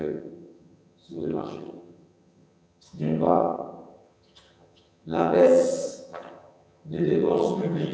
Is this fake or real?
fake